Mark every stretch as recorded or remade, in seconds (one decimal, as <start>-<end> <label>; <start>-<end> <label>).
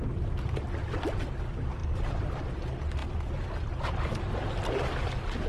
0.0-5.5 recorded